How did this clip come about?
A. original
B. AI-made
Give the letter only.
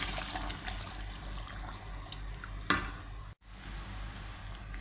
A